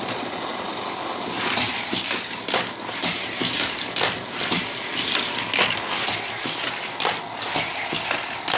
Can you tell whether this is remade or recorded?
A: recorded